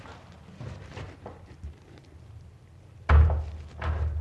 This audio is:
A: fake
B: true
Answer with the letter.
B